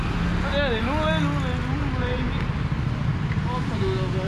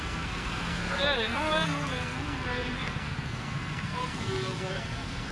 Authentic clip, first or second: first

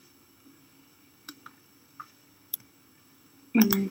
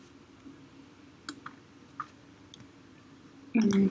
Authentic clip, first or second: second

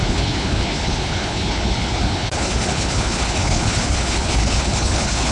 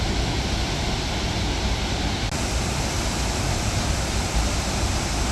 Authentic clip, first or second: second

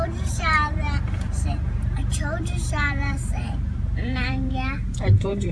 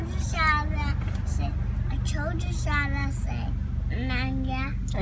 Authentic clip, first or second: second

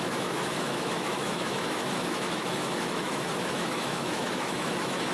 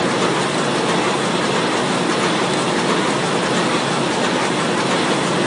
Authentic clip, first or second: second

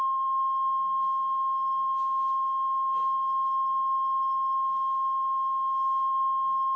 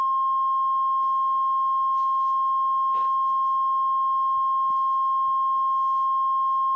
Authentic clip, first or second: second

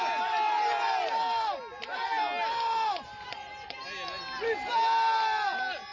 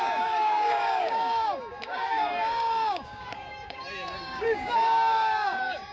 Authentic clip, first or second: first